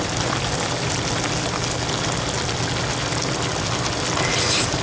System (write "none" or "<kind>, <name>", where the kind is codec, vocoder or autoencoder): none